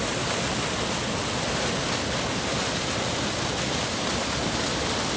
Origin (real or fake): real